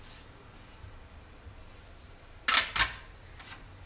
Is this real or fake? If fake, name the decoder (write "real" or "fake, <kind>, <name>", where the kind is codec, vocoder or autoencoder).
real